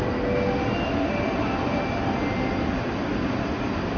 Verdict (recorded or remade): recorded